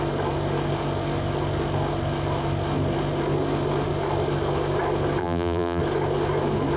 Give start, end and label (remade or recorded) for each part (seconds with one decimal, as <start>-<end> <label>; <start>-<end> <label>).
0.0-5.2 recorded; 5.2-5.8 remade; 5.8-6.8 recorded